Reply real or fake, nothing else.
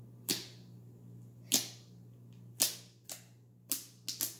real